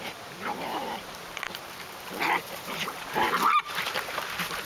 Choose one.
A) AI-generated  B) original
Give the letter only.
A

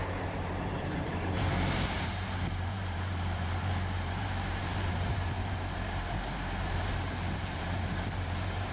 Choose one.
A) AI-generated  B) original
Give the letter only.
A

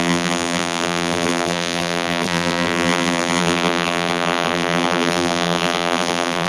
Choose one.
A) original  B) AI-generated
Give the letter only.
B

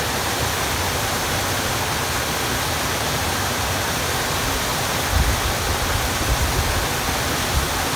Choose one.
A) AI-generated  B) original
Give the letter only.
B